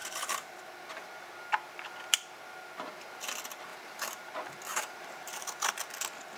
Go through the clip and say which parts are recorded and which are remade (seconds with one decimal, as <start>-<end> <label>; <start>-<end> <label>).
0.0-0.6 remade; 0.6-3.7 recorded; 3.7-4.3 remade; 4.3-4.7 recorded; 4.7-5.7 remade; 5.7-6.4 recorded